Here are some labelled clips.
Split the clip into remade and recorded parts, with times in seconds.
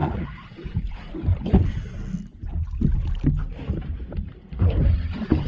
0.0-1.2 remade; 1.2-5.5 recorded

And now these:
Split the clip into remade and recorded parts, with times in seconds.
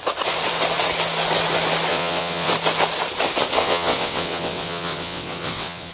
0.0-1.9 recorded; 1.9-2.5 remade; 2.5-3.6 recorded; 3.6-5.9 remade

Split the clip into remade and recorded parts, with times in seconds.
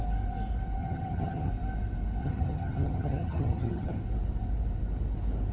0.0-0.8 recorded; 0.8-1.5 remade; 1.5-2.2 recorded; 2.2-4.0 remade; 4.0-5.5 recorded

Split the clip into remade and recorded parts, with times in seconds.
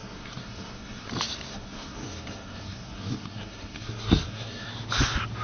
0.0-1.1 remade; 1.1-1.5 recorded; 1.5-4.7 remade; 4.7-5.4 recorded